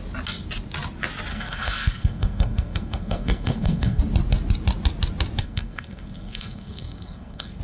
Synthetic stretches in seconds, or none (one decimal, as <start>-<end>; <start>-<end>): 1.3-4.0; 5.4-7.6